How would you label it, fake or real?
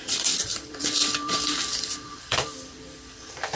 fake